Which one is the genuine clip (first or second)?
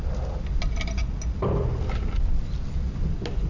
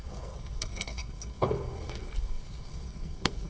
first